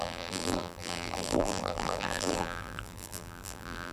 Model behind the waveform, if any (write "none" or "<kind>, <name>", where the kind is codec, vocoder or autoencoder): vocoder, BigVGAN v2